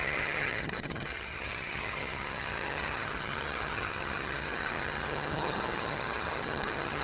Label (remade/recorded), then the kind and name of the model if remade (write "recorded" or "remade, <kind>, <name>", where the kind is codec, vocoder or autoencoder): remade, vocoder, HiFi-GAN